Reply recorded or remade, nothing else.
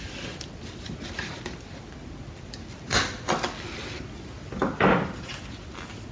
recorded